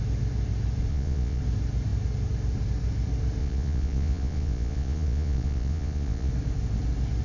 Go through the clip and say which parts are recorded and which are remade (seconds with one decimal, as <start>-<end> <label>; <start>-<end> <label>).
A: 0.0-0.9 recorded; 0.9-1.4 remade; 1.4-3.4 recorded; 3.4-6.3 remade; 6.3-7.2 recorded